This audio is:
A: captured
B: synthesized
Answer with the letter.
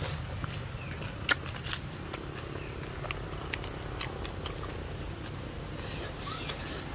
A